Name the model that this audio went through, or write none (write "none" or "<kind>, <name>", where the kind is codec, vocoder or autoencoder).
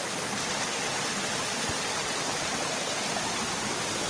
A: vocoder, BigVGAN v2